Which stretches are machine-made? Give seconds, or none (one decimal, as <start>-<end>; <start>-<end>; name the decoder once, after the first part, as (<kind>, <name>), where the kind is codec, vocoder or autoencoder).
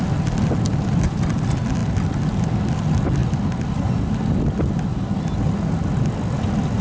none